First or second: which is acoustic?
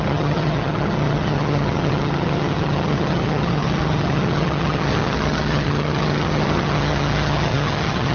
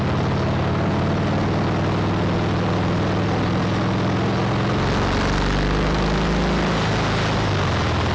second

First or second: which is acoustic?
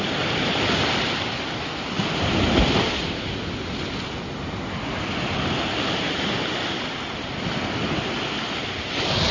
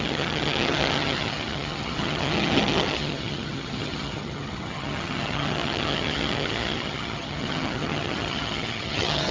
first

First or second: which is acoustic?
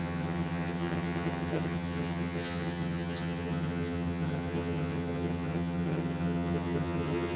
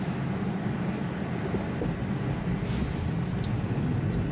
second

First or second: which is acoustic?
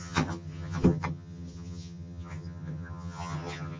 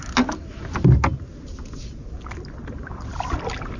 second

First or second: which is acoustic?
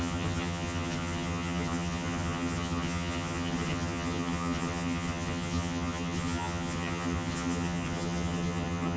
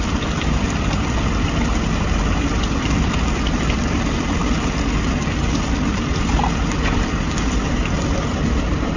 second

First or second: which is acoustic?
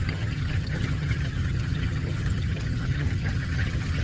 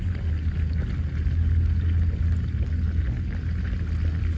second